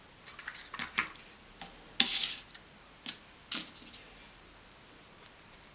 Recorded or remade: recorded